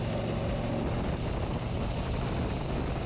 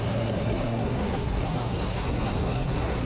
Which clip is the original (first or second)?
first